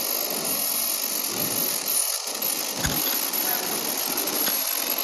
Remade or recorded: recorded